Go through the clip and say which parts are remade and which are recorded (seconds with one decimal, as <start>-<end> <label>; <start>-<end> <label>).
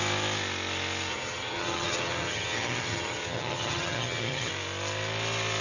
0.0-1.1 recorded; 1.1-4.5 remade; 4.5-5.6 recorded